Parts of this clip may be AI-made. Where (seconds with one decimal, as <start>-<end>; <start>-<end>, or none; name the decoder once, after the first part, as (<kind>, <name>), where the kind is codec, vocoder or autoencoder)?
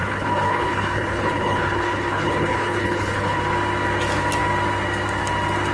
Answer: 0.0-3.4 (codec, HILCodec)